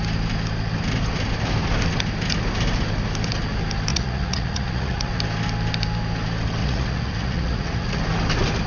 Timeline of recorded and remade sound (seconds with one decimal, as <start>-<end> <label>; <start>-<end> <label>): 0.0-3.9 recorded; 3.9-5.2 remade; 5.2-6.6 recorded; 6.6-8.0 remade; 8.0-8.7 recorded